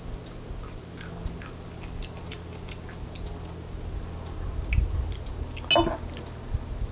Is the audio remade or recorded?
recorded